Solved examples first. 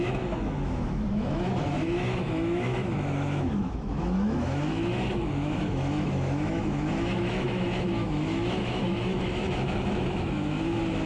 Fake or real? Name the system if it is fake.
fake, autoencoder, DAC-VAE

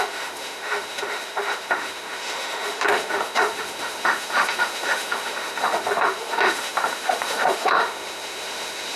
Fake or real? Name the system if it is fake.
fake, autoencoder, DAC-VAE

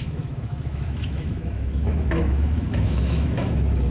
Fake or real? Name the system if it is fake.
fake, autoencoder, DAC-VAE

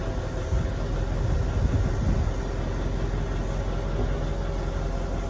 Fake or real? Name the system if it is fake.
real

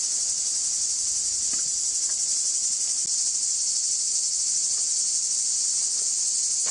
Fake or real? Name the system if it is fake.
real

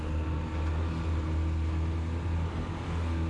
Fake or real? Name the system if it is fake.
real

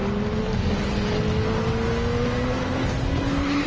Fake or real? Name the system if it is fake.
real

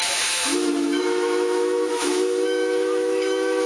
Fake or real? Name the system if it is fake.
fake, autoencoder, DAC-VAE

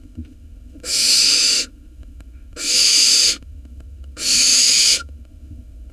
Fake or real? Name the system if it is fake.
fake, autoencoder, DAC-VAE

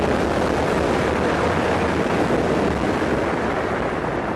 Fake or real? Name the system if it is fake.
real